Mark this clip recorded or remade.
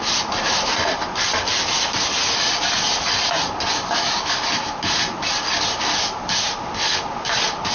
recorded